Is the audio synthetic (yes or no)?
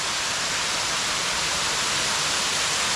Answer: no